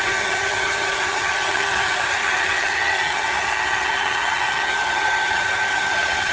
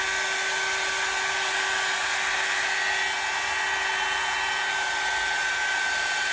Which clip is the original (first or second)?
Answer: second